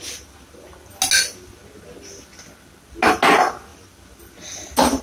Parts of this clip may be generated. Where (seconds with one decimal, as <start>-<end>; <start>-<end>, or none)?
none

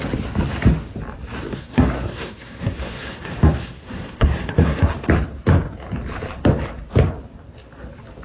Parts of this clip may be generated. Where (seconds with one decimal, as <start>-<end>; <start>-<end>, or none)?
1.5-4.9

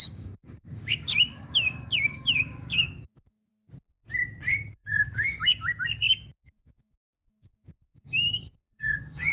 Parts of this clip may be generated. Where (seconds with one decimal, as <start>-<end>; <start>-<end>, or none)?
0.0-3.5; 4.7-9.3

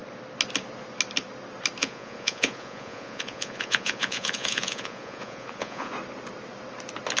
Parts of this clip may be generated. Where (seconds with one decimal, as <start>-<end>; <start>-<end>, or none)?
1.8-5.9